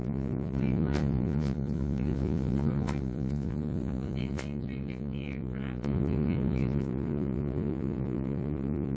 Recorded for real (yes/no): no